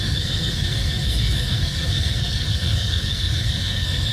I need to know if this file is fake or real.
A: fake